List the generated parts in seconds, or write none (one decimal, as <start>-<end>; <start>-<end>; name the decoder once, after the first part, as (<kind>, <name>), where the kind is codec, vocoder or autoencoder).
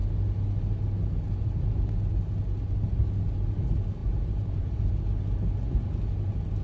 4.0-4.9 (vocoder, BigVGAN v2)